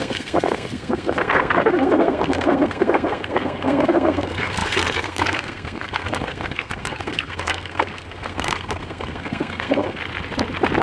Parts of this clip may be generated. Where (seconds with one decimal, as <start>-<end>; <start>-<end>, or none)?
0.0-10.0

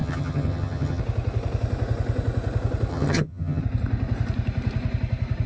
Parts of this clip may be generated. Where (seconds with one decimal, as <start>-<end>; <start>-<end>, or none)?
0.0-1.0; 2.9-3.6

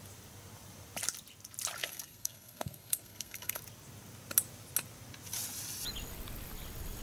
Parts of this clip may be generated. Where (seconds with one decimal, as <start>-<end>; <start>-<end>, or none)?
1.8-3.6

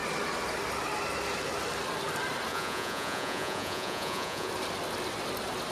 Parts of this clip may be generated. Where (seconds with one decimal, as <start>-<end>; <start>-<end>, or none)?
2.5-4.5

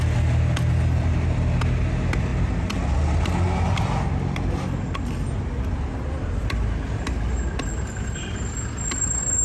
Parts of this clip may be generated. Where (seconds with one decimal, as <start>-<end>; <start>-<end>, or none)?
none

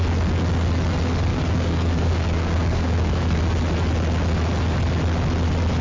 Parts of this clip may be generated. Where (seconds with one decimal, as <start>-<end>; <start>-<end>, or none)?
1.3-3.4